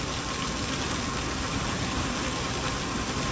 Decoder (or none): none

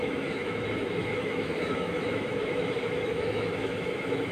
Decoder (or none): autoencoder, DAC-VAE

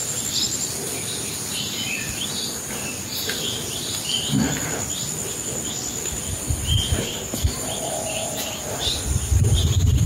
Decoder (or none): vocoder, BigVGAN v2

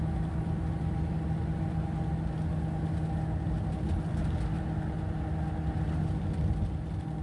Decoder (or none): none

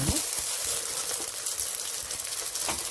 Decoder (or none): none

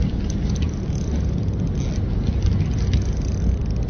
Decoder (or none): none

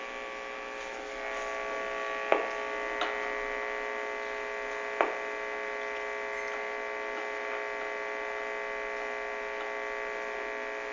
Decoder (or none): none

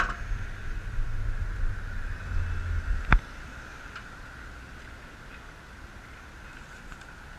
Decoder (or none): none